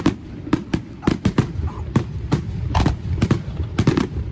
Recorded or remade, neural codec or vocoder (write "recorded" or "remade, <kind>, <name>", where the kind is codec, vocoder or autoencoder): remade, vocoder, BigVGAN v2